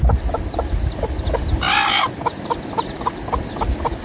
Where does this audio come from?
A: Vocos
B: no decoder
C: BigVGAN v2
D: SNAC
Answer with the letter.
B